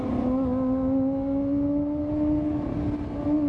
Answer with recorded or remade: recorded